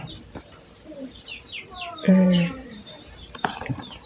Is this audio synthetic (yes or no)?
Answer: yes